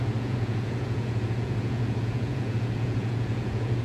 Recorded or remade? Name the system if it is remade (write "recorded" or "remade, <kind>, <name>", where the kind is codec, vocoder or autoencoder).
remade, vocoder, Vocos